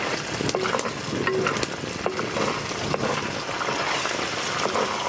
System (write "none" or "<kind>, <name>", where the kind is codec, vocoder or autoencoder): none